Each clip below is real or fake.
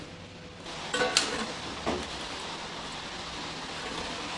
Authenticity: real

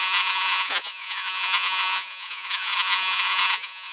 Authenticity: fake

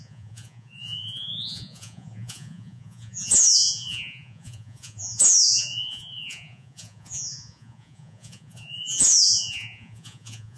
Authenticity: fake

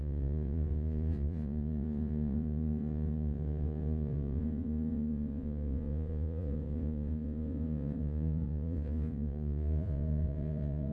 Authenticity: fake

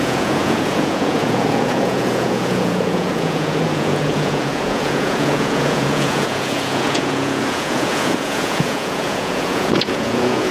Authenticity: fake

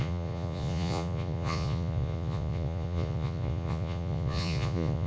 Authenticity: fake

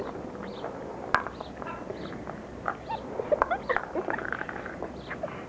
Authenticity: real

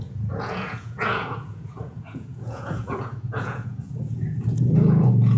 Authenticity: fake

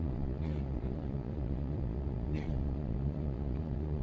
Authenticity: fake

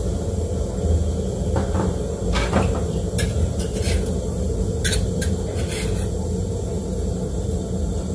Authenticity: real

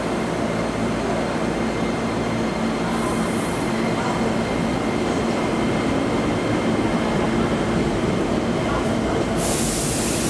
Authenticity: real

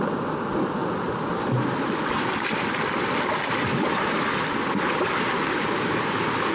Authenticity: real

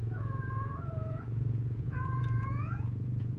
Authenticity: fake